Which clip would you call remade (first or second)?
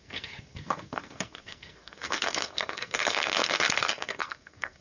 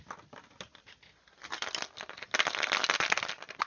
first